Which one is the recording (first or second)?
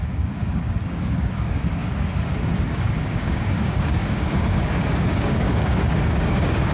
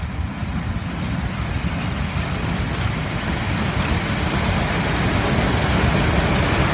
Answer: second